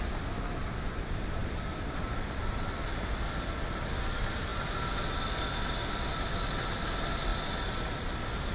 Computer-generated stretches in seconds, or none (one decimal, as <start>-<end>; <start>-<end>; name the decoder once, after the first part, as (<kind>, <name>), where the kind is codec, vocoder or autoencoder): 1.4-2.4 (vocoder, BigVGAN v2)